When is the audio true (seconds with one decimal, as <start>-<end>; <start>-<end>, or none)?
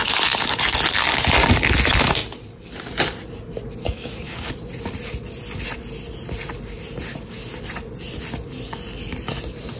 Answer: 0.0-3.8; 4.5-9.8